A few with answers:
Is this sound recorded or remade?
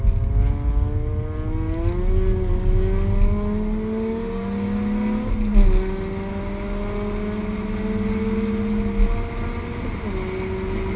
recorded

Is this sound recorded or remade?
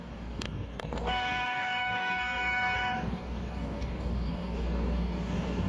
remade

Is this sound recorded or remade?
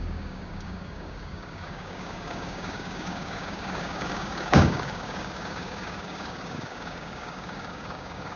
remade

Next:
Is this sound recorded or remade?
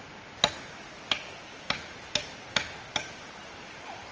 recorded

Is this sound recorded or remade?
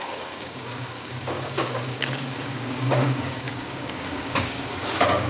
remade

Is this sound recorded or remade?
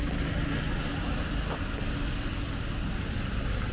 recorded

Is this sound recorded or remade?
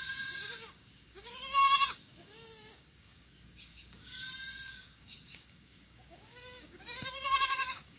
remade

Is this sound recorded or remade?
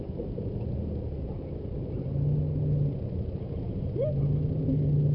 recorded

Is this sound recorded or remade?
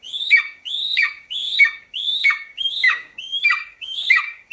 remade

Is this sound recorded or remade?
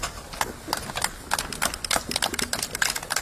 recorded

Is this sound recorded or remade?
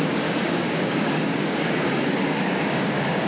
remade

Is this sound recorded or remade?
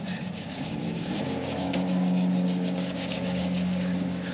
remade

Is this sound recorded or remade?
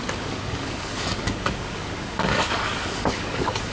remade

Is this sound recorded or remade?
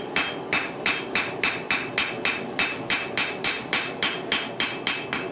recorded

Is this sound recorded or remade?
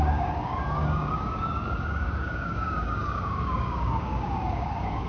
remade